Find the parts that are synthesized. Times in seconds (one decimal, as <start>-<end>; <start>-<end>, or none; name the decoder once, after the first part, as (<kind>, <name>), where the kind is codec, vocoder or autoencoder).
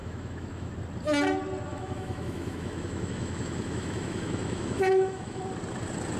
0.0-0.7 (autoencoder, DAC-VAE); 1.7-5.4